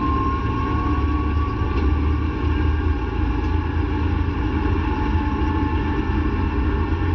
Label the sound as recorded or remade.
recorded